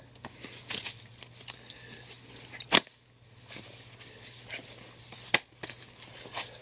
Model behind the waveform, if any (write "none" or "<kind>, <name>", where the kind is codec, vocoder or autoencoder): none